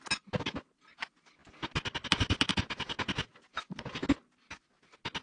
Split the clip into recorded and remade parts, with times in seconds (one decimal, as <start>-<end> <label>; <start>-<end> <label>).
0.0-5.2 recorded